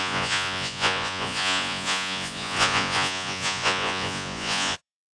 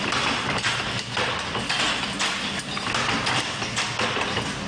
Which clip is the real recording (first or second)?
second